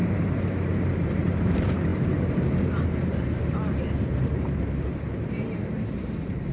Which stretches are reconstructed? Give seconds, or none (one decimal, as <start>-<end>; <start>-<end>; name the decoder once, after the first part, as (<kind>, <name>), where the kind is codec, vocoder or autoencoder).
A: 0.0-6.5 (vocoder, BigVGAN v2)